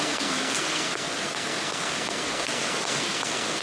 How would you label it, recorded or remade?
remade